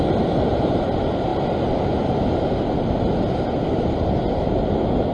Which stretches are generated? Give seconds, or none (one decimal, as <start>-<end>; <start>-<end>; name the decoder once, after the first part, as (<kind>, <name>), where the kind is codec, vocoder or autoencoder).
none